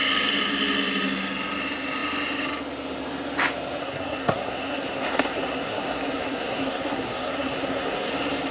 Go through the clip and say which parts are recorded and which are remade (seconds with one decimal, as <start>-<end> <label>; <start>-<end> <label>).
0.0-3.8 recorded; 3.8-8.1 remade; 8.1-8.5 recorded